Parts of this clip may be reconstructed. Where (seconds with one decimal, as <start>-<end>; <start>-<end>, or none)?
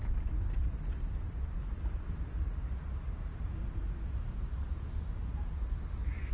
none